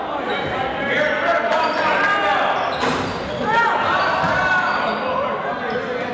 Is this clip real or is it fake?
real